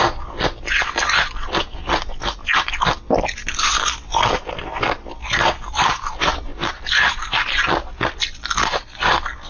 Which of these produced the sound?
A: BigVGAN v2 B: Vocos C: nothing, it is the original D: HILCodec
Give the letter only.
C